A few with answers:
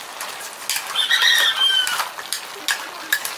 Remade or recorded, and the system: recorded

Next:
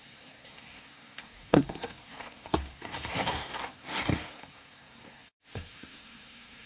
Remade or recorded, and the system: remade, codec, SNAC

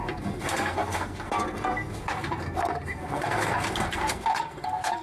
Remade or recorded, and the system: remade, codec, SNAC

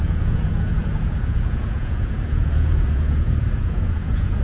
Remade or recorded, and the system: remade, vocoder, Vocos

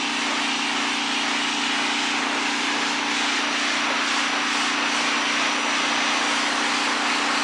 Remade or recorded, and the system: recorded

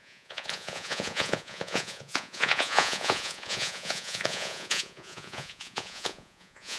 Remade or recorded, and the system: remade, vocoder, Vocos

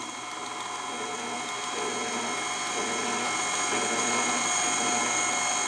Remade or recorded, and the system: recorded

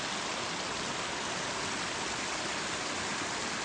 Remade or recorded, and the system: recorded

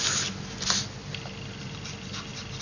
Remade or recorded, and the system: recorded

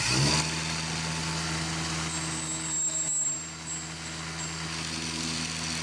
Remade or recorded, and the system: recorded